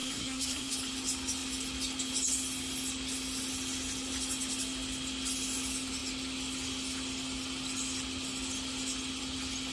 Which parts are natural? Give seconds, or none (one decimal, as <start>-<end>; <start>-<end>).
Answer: 0.7-9.7